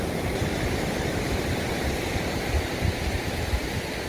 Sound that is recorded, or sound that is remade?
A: recorded